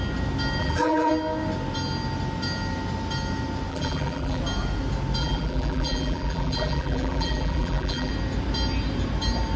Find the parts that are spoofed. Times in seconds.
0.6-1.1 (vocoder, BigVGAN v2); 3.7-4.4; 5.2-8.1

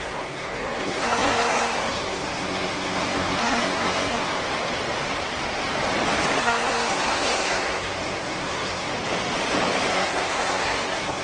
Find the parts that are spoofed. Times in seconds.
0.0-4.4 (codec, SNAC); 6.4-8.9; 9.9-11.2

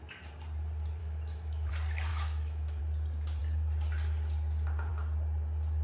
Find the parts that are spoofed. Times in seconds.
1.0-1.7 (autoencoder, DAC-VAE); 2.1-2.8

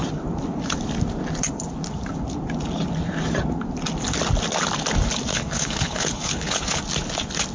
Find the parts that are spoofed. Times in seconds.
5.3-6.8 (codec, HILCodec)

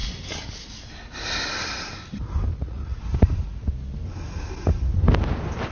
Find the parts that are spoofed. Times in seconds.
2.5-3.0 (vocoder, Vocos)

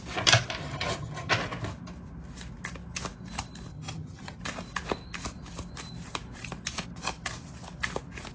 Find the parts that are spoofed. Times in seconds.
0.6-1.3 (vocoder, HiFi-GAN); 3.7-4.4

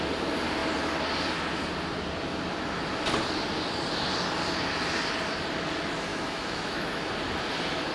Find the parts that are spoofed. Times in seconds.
6.1-7.0 (autoencoder, DAC-VAE)